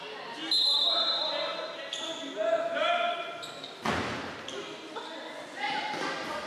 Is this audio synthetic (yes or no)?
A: no